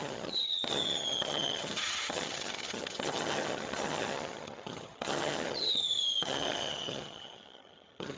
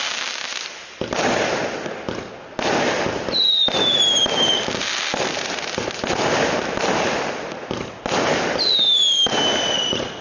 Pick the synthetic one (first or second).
first